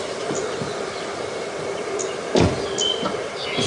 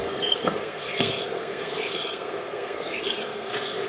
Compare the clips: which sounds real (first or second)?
first